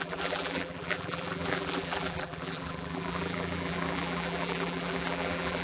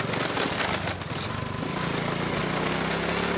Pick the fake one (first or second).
first